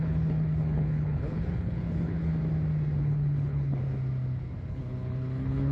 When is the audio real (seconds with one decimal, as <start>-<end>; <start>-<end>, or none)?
2.3-3.0; 3.8-4.7